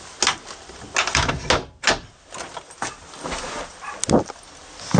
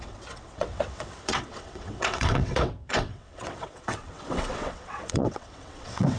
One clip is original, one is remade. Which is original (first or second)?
first